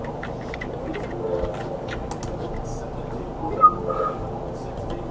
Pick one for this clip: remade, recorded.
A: recorded